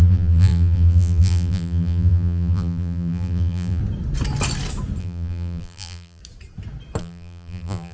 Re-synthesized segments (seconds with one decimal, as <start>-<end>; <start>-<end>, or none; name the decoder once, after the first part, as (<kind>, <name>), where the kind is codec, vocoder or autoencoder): 0.0-3.8 (vocoder, BigVGAN v2); 5.0-6.2; 7.0-7.9